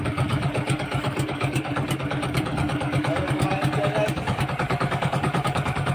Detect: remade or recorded remade